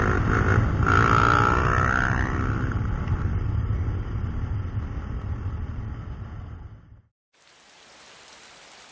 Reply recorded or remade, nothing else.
recorded